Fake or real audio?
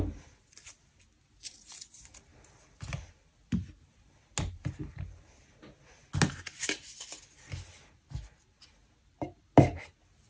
real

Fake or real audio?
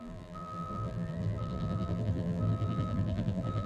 fake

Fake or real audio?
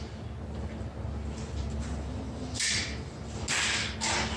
real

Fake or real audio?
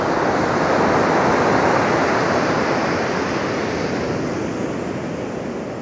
real